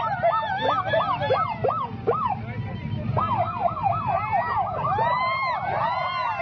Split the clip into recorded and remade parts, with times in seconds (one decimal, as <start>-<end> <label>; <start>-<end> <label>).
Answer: 0.0-6.4 recorded